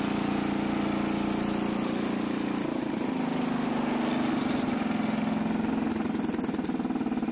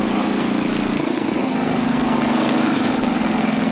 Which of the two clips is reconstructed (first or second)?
second